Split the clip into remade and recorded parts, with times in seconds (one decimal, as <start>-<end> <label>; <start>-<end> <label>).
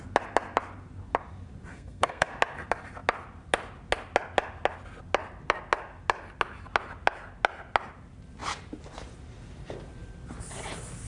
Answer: 0.0-1.7 recorded; 1.7-2.3 remade; 2.3-11.1 recorded